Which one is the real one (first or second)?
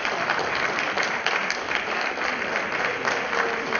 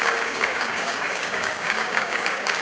first